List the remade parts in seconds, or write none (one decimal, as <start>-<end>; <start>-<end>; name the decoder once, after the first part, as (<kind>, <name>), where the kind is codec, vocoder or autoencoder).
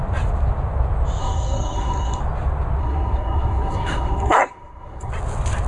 1.2-2.2 (codec, SNAC); 2.8-5.1